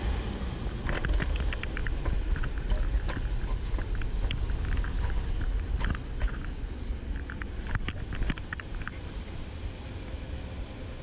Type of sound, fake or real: real